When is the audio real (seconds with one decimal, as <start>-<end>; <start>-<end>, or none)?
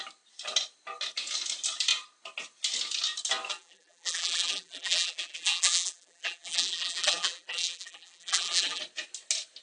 0.0-3.5; 8.8-9.6